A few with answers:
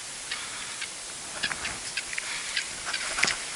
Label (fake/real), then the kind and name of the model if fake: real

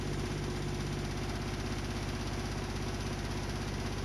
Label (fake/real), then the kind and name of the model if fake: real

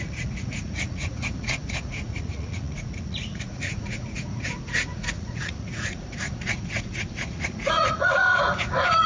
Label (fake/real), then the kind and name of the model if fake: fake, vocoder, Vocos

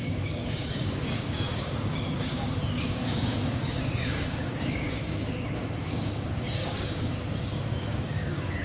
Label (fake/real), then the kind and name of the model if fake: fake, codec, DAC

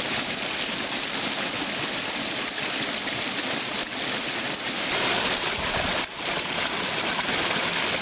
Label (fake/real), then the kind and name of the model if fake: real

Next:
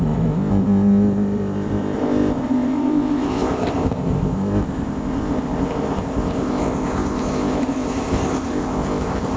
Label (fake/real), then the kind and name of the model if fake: fake, codec, ZipCodec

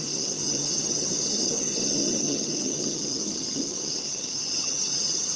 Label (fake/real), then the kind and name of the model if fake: fake, vocoder, HiFi-GAN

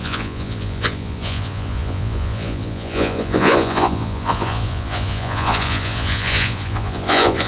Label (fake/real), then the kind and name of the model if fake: fake, vocoder, Vocos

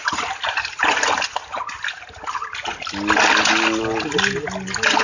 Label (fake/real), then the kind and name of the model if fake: real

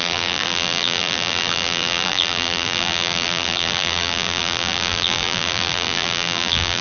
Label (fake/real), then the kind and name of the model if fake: fake, vocoder, BigVGAN v2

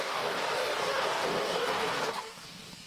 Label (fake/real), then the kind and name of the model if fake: fake, codec, DAC